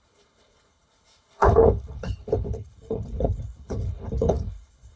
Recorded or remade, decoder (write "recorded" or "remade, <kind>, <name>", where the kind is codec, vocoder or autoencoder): remade, codec, HILCodec